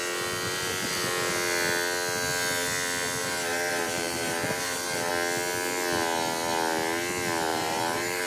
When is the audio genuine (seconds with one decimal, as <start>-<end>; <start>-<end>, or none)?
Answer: 0.0-3.2; 5.1-7.5